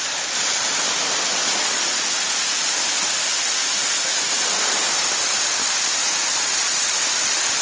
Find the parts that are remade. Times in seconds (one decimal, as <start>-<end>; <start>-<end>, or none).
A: 1.4-2.4; 6.3-6.9